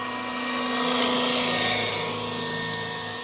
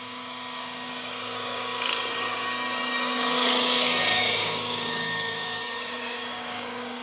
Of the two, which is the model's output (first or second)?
second